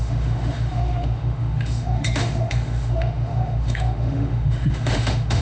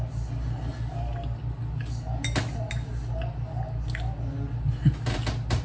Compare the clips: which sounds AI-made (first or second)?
first